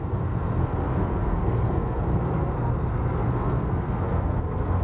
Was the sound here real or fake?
fake